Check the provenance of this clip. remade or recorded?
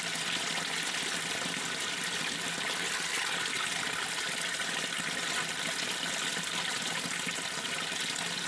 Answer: recorded